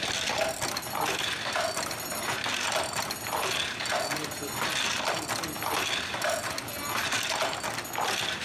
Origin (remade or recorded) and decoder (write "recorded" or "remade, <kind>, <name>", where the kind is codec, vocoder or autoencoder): recorded